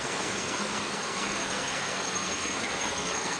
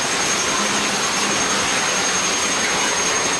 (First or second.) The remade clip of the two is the first